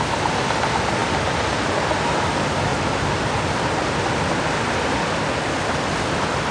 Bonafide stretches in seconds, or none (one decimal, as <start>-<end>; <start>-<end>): 0.0-6.5